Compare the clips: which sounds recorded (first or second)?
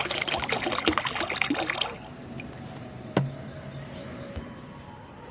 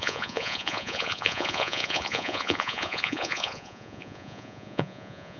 first